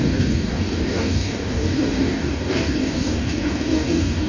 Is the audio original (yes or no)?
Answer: no